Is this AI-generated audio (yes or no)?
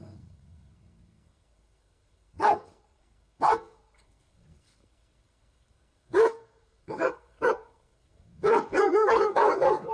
yes